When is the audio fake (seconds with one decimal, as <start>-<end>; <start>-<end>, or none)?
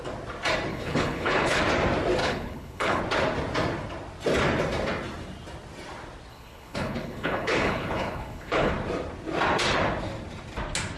0.7-1.6; 2.2-3.0; 6.3-8.7